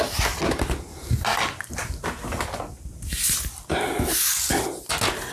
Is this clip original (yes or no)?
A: yes